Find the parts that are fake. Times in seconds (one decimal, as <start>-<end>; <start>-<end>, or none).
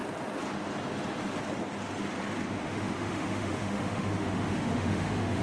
2.5-5.4